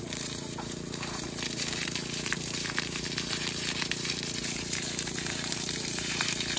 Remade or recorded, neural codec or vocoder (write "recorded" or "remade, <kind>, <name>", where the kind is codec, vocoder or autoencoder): remade, vocoder, BigVGAN v2